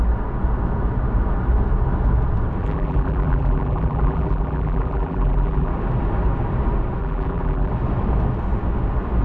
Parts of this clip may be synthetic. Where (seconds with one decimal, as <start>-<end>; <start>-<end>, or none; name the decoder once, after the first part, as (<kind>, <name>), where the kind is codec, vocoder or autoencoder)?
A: 2.6-5.7 (vocoder, BigVGAN v2); 7.0-7.7